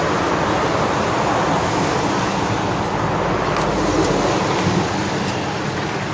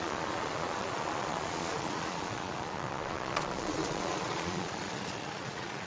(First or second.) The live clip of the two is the first